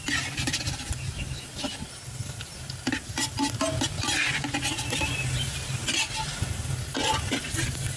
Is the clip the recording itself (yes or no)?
yes